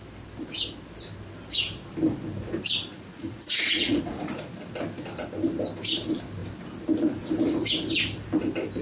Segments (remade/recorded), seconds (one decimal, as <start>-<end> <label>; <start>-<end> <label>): 0.0-2.9 recorded; 2.9-4.5 remade; 4.5-8.8 recorded